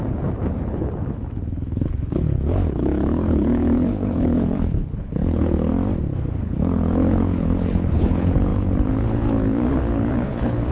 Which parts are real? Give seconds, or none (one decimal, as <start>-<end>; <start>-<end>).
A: 5.7-6.4